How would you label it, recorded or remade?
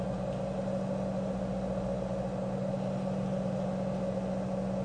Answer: recorded